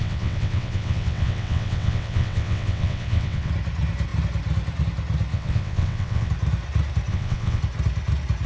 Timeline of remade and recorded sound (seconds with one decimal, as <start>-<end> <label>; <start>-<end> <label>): 0.0-3.5 remade; 3.5-5.3 recorded; 5.3-6.3 remade; 6.3-7.1 recorded; 7.1-7.6 remade; 7.6-8.5 recorded